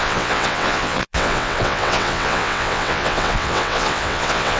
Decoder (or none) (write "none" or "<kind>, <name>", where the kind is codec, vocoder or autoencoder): vocoder, WaveNeXt